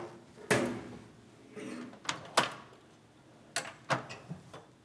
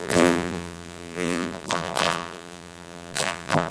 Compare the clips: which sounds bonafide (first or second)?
first